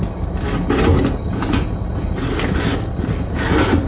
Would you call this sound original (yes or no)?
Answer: yes